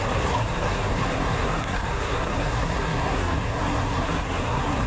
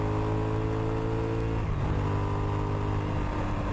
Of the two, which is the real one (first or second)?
second